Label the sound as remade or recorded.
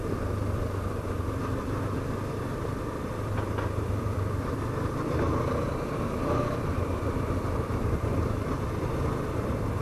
remade